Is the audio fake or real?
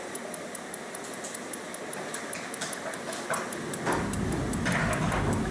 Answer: real